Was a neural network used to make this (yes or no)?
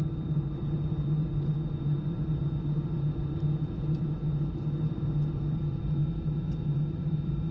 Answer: yes